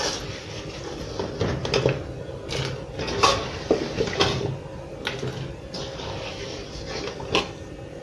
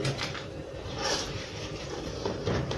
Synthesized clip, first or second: second